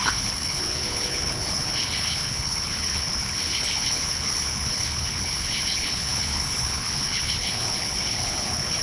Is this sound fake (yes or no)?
yes